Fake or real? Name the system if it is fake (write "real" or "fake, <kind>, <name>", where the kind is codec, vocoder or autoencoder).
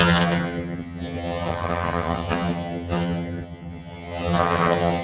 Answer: fake, vocoder, HiFi-GAN